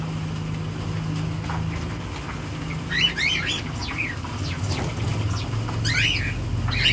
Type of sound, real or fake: real